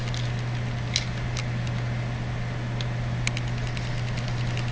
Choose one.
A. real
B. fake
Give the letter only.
A